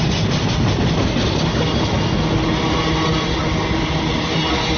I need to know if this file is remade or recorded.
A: recorded